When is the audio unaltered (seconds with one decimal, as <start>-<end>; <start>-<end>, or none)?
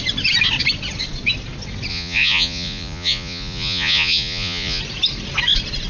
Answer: 0.0-1.9; 4.8-5.9